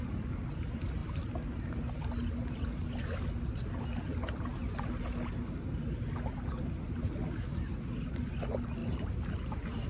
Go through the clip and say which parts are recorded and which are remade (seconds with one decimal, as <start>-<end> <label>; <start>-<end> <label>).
0.0-9.9 recorded